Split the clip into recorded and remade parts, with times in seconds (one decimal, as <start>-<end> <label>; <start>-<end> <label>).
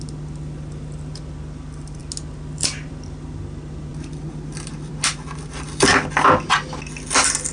0.0-7.5 recorded